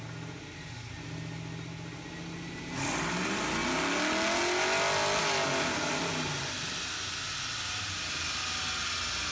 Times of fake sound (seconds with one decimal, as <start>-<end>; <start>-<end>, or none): none